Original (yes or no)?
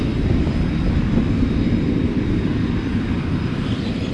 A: yes